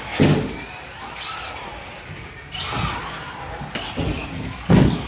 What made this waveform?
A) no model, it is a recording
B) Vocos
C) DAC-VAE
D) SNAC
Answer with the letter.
A